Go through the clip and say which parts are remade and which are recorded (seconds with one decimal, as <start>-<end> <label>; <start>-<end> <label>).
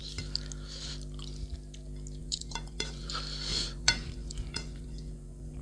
0.0-2.2 recorded; 2.2-3.1 remade; 3.1-3.5 recorded; 3.5-5.6 remade